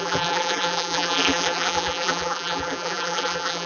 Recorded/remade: remade